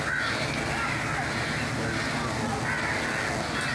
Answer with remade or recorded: recorded